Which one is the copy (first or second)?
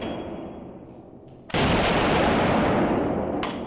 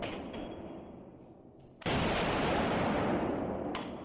second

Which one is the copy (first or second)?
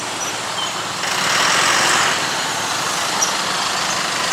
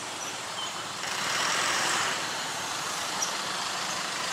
second